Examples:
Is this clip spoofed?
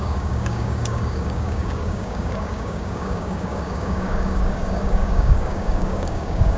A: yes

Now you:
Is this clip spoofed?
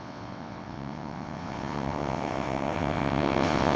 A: yes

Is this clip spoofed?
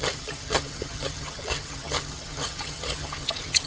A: yes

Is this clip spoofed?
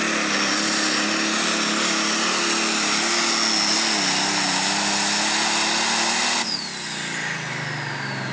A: no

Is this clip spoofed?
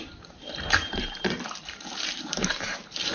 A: yes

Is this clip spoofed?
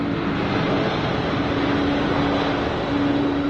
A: no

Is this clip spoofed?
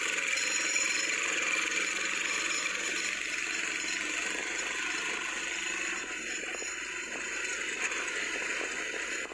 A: no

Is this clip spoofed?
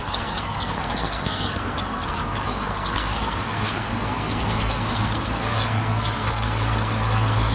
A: yes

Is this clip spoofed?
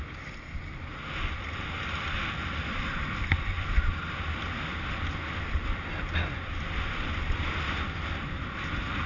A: no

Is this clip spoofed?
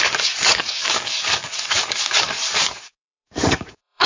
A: yes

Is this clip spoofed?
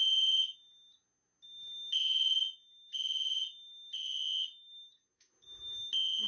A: no